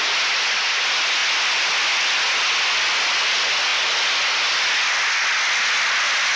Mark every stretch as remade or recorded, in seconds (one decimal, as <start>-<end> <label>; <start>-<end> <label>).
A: 0.0-6.4 recorded